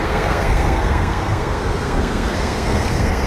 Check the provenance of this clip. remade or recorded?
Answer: remade